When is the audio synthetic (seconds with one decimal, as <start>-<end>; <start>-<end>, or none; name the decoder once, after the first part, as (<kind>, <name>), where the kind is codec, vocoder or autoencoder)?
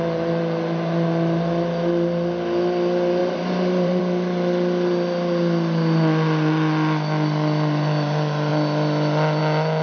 3.2-4.0 (vocoder, BigVGAN v2)